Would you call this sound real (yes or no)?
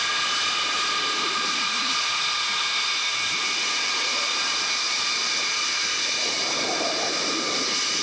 yes